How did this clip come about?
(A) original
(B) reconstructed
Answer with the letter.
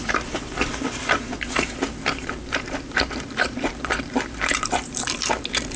B